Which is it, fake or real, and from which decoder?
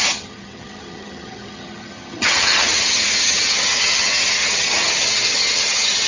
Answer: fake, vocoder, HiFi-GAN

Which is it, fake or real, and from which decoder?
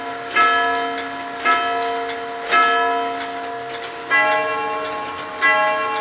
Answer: real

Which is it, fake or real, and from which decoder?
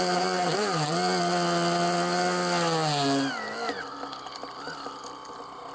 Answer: real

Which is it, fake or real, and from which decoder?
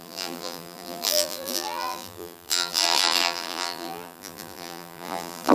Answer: fake, vocoder, BigVGAN v2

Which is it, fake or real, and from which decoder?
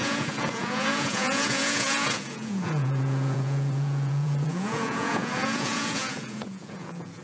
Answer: fake, vocoder, Vocos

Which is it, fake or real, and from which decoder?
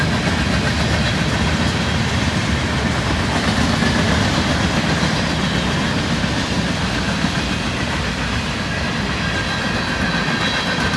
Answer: real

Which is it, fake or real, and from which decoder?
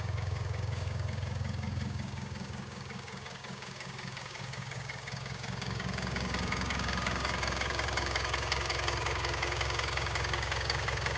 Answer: fake, codec, DAC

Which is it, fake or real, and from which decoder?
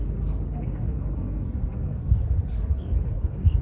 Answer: fake, codec, SNAC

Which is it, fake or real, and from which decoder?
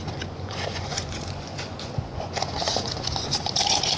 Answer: fake, vocoder, Vocos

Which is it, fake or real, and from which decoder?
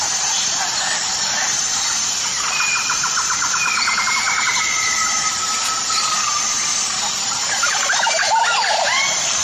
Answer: fake, vocoder, BigVGAN v2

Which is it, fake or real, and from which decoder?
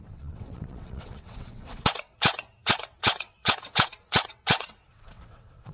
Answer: fake, vocoder, WaveNeXt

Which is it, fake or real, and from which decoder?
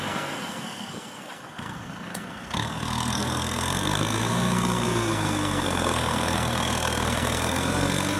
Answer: fake, codec, SNAC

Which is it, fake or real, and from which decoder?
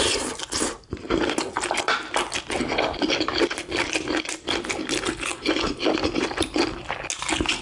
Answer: real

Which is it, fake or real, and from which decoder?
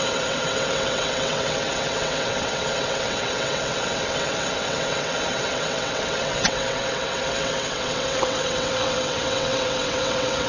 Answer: fake, vocoder, WaveNeXt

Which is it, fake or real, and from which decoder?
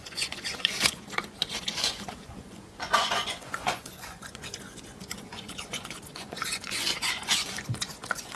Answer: fake, vocoder, Vocos